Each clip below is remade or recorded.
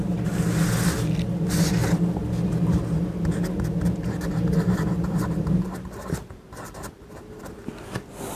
remade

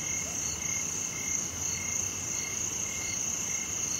recorded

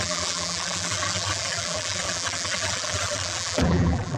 remade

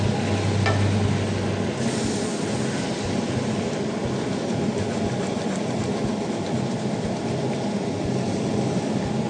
recorded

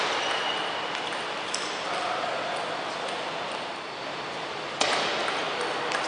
recorded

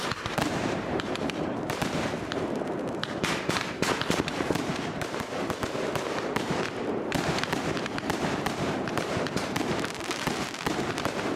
remade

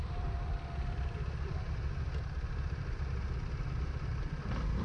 remade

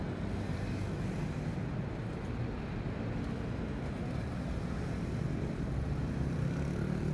recorded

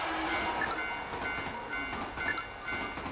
recorded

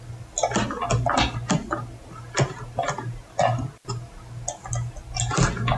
recorded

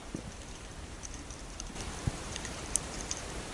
remade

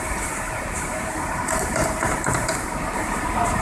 remade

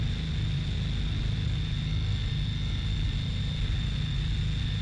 recorded